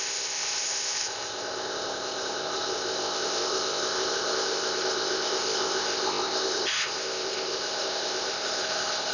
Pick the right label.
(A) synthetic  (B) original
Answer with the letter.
A